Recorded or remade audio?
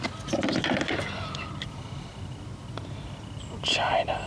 recorded